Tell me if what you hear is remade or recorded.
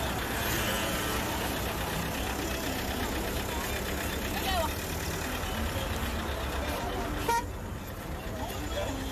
recorded